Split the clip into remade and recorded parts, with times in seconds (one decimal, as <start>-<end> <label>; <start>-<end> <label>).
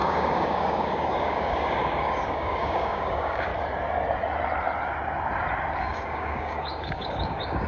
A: 0.0-3.5 remade; 3.5-5.8 recorded; 5.8-7.7 remade